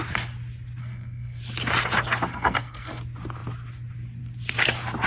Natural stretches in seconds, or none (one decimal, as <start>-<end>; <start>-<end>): 0.0-0.8; 1.4-2.3; 3.0-5.1